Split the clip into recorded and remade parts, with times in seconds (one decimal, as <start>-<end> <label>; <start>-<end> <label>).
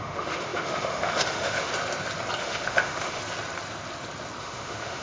0.0-1.7 remade; 1.7-2.4 recorded; 2.4-3.2 remade; 3.2-4.4 recorded; 4.4-5.0 remade